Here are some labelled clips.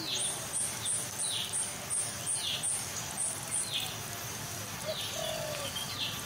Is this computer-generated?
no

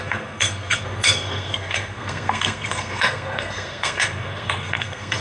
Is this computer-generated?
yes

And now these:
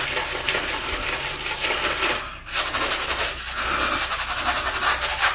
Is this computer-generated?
no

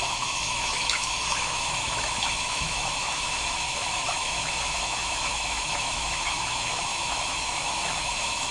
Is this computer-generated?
yes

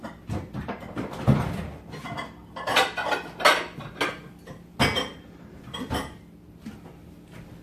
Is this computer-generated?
no